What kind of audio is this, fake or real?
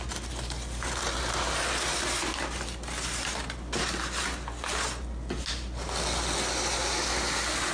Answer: real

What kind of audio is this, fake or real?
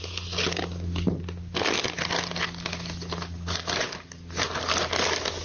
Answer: real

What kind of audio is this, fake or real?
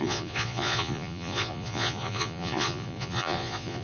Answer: fake